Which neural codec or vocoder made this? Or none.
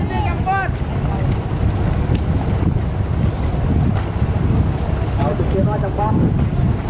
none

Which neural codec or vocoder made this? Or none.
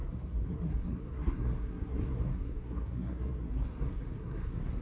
codec, SNAC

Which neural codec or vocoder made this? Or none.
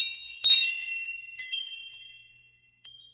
codec, SNAC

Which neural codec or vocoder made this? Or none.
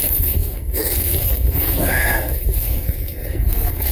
codec, SNAC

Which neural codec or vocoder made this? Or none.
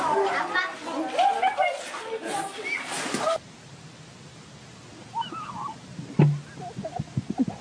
none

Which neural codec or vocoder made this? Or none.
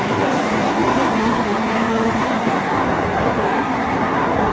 codec, SNAC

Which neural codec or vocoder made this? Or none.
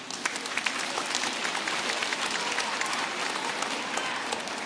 none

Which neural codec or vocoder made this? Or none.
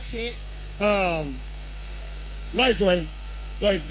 codec, SNAC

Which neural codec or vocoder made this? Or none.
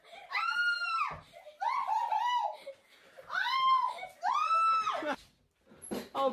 none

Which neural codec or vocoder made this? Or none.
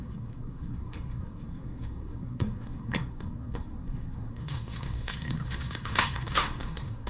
codec, SNAC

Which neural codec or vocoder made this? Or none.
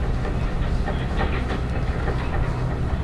none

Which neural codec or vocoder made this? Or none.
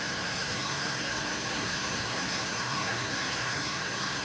codec, SNAC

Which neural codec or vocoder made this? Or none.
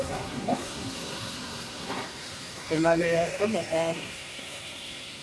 codec, SNAC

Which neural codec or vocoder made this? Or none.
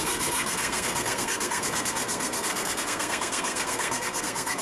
codec, SNAC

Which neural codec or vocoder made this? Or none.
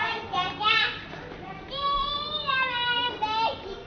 none